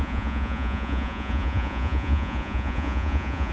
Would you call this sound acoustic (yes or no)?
no